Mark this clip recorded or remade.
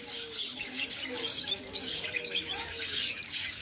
remade